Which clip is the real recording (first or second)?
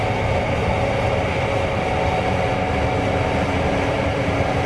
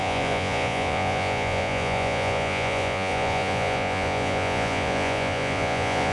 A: first